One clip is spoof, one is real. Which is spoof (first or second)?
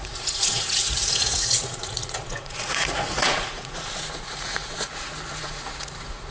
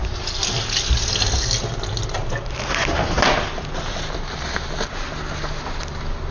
first